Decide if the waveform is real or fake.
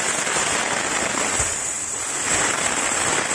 real